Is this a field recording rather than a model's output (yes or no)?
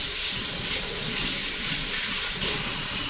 no